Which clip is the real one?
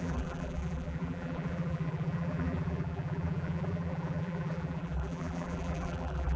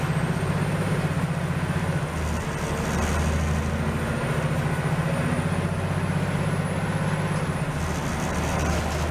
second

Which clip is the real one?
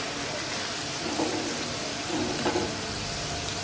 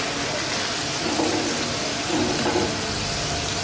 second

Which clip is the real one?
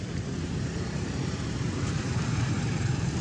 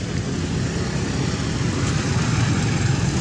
second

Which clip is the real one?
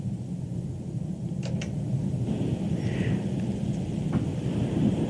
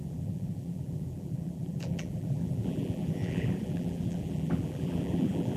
first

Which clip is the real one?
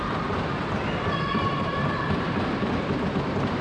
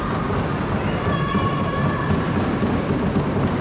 second